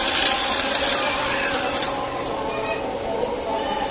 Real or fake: real